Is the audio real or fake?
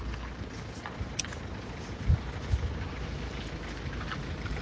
real